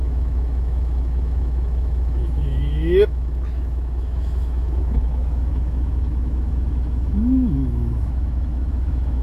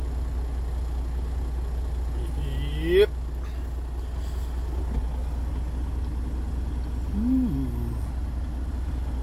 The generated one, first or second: first